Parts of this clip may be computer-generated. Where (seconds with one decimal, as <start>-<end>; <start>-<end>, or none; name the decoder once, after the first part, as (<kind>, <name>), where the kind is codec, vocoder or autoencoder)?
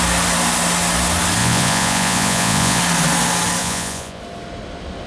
1.4-2.8 (vocoder, Vocos); 3.6-4.2